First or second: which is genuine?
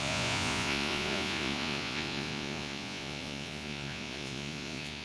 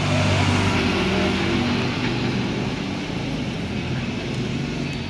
second